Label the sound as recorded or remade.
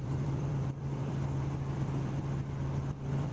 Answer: remade